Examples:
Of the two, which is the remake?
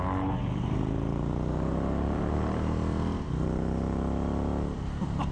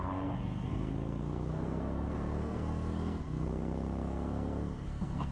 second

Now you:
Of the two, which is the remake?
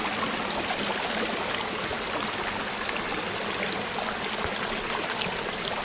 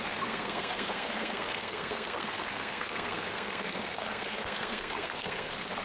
second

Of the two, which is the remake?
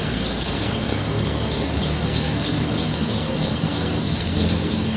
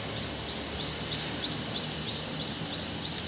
first